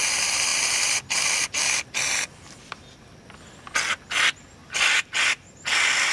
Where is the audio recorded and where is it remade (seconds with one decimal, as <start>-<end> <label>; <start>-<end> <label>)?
0.0-6.1 recorded